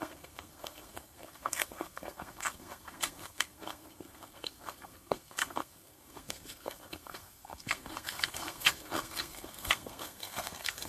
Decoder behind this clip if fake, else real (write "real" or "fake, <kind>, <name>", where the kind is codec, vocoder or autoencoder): fake, codec, SNAC